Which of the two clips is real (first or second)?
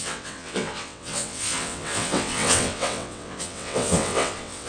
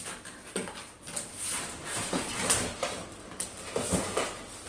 second